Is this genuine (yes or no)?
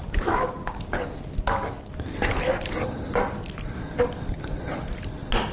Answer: yes